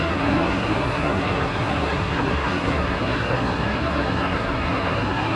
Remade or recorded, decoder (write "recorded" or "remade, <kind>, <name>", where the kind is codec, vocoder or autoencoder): remade, codec, SNAC